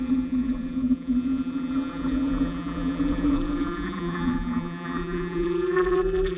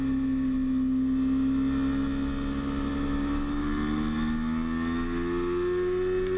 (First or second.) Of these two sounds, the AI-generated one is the first